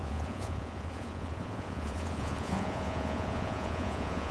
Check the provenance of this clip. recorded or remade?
remade